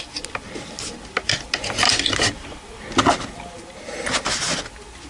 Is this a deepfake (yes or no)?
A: no